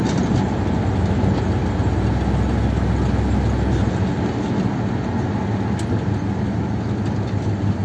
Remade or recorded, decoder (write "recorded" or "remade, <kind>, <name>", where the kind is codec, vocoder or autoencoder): recorded